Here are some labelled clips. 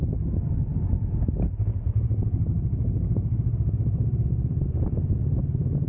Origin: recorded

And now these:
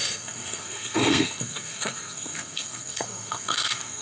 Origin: remade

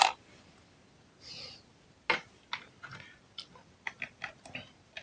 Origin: recorded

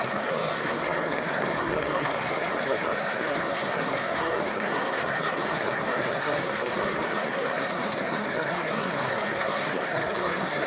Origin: remade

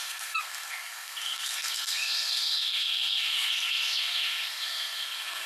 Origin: remade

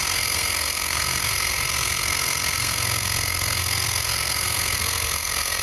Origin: remade